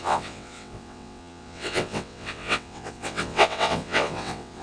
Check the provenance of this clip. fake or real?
fake